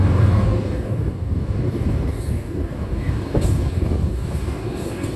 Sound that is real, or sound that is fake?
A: fake